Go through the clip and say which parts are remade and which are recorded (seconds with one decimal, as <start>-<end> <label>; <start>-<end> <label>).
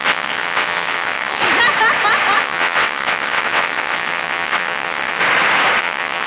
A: 0.0-1.4 remade; 1.4-2.4 recorded; 2.4-5.2 remade; 5.2-5.8 recorded; 5.8-6.3 remade